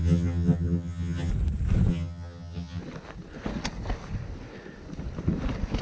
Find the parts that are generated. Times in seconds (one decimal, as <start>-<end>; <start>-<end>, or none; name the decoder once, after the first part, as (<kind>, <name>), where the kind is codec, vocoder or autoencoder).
0.0-1.3 (vocoder, HiFi-GAN); 1.9-2.8

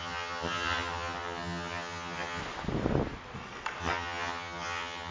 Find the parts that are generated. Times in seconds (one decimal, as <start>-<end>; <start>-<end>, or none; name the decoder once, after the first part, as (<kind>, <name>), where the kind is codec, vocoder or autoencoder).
0.0-2.4 (vocoder, HiFi-GAN); 3.8-5.1

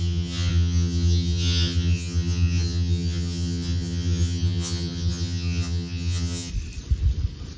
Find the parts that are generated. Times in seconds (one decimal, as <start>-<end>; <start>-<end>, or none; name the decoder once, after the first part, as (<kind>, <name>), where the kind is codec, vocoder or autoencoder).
0.0-6.5 (vocoder, HiFi-GAN)

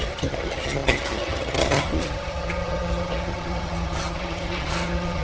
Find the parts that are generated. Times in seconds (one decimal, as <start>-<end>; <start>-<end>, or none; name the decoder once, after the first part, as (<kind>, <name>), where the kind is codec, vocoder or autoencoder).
0.0-5.2 (vocoder, HiFi-GAN)

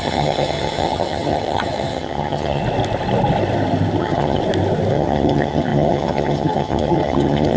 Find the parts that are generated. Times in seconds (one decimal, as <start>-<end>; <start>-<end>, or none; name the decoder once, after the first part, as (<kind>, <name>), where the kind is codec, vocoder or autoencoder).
0.0-2.6 (vocoder, HiFi-GAN); 4.0-4.4; 4.9-7.6

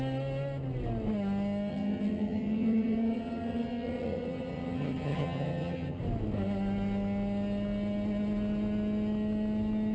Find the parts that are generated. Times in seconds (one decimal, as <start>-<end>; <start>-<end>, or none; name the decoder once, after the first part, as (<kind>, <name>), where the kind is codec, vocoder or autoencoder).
1.7-6.0 (vocoder, HiFi-GAN)